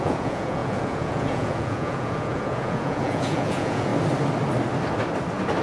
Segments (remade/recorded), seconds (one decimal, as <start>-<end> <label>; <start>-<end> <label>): 0.0-3.9 remade; 3.9-5.6 recorded